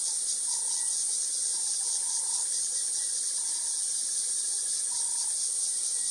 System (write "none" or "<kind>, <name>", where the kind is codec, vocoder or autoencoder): none